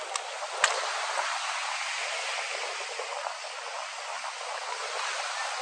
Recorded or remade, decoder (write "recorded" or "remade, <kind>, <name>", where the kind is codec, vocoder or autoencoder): recorded